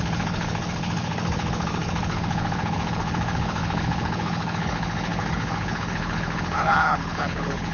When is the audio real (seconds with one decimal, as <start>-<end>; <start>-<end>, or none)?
none